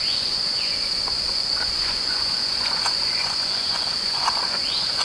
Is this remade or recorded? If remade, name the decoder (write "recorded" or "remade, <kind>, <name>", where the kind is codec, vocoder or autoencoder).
remade, vocoder, Vocos